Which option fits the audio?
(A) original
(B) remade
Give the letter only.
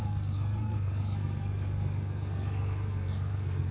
B